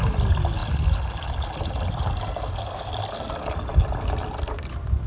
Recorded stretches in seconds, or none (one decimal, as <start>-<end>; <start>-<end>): 0.0-5.1